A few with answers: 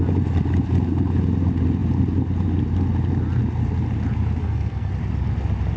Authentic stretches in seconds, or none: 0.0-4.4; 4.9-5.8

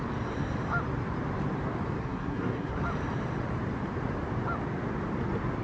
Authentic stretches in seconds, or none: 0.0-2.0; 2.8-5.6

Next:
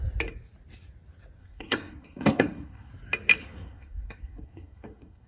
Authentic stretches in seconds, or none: 0.0-1.4; 2.9-3.4